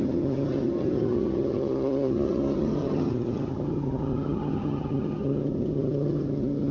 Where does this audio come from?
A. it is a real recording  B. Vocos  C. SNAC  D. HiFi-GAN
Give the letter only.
D